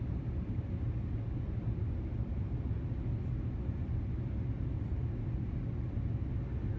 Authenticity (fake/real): real